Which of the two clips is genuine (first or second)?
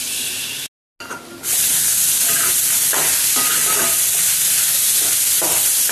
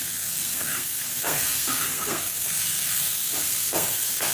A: first